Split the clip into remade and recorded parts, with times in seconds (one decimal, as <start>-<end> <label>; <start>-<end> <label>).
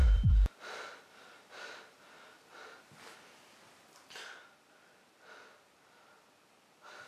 0.0-1.2 remade; 1.2-7.1 recorded